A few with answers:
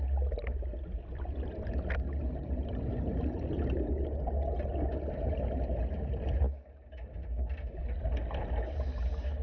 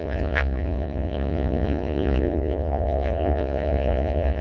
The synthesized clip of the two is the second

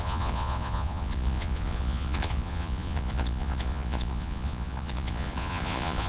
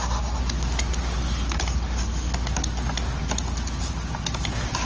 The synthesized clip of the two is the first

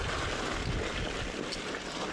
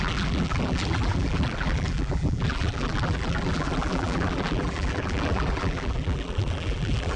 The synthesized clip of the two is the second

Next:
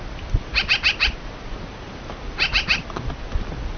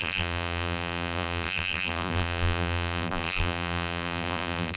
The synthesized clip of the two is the second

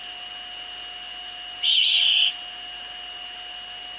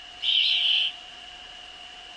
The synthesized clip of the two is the second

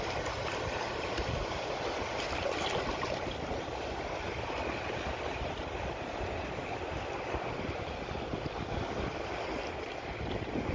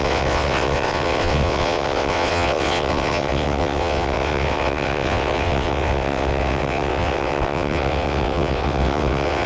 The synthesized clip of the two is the second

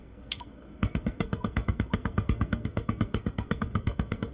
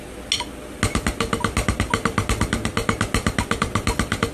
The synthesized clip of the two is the first